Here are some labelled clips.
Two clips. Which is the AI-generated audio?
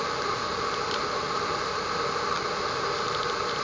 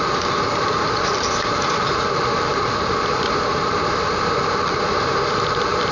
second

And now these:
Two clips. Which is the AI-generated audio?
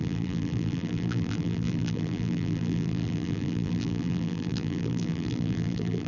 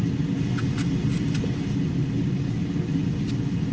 first